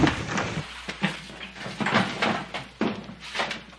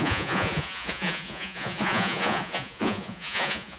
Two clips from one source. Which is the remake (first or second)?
second